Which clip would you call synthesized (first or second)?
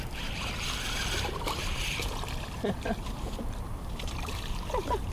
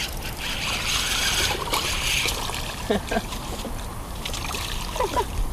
first